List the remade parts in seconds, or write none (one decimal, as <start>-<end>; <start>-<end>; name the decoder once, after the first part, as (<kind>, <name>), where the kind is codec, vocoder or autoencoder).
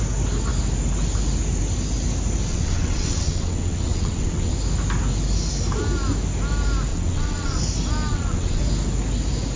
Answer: 2.5-4.5 (vocoder, WaveNeXt); 6.9-7.6; 8.1-8.6